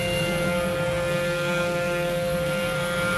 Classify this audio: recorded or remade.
remade